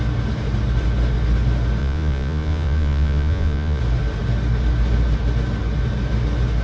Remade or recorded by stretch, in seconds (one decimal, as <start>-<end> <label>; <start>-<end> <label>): 0.0-1.8 recorded; 1.8-3.8 remade; 3.8-6.6 recorded